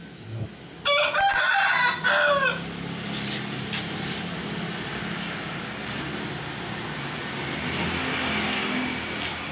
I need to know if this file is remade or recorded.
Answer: recorded